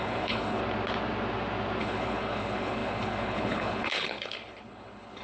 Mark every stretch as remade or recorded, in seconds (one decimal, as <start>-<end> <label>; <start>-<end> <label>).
0.0-0.6 remade; 0.6-1.8 recorded; 1.8-5.2 remade